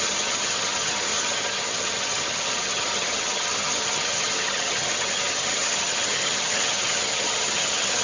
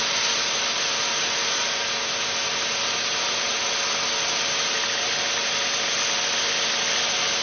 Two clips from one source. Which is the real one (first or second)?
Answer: second